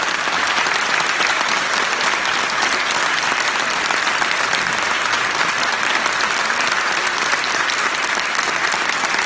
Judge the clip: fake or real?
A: real